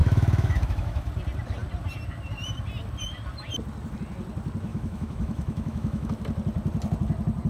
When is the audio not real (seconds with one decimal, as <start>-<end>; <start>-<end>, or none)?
0.0-1.1; 4.7-6.1